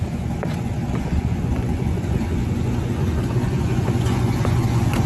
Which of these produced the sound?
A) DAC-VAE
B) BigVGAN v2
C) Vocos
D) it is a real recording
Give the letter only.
C